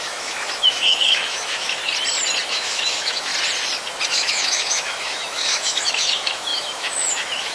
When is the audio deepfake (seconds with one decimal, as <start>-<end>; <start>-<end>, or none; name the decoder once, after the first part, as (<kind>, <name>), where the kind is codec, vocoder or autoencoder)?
0.0-1.8 (autoencoder, DAC-VAE); 2.5-3.3; 4.1-7.5